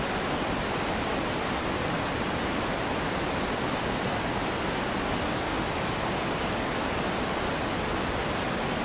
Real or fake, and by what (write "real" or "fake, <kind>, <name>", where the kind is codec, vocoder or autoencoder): real